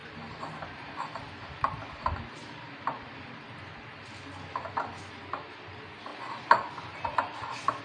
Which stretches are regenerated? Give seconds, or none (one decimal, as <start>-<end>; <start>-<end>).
none